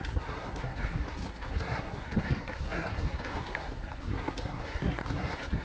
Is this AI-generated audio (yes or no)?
yes